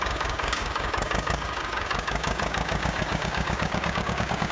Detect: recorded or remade remade